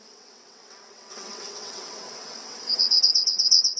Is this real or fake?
fake